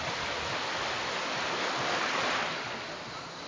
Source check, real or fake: real